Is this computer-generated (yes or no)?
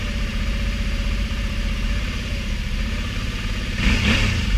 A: yes